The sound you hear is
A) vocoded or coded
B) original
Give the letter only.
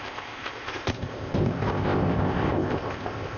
A